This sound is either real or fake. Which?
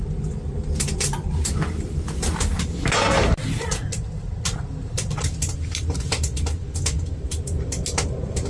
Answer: real